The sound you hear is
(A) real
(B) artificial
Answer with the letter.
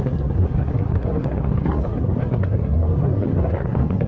B